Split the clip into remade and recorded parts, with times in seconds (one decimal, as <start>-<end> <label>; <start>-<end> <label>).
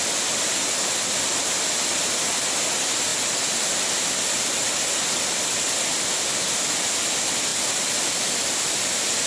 0.0-9.3 recorded